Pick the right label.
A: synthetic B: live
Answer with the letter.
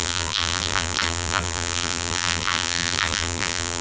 A